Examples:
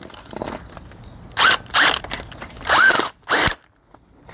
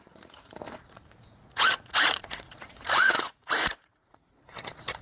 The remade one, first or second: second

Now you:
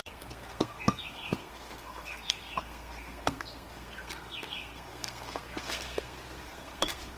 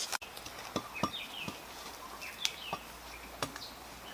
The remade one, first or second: first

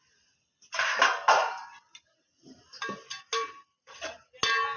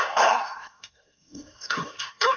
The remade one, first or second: second